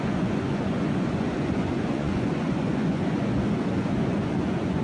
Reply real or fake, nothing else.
fake